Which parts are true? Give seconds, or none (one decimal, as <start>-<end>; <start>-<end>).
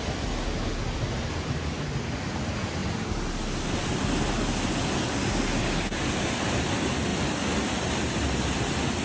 0.0-9.0